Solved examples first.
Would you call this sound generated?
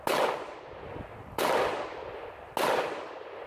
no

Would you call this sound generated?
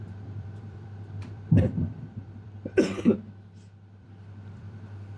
yes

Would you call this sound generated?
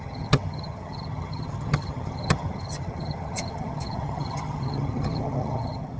yes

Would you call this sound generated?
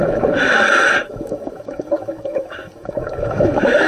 yes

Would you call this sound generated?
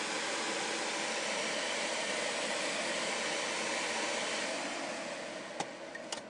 no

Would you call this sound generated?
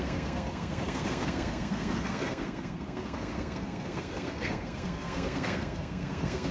yes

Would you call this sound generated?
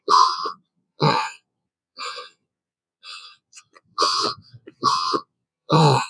yes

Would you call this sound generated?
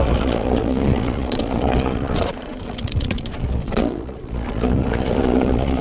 yes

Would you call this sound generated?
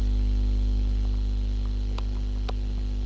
no